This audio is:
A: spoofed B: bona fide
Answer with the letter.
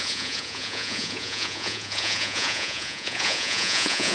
A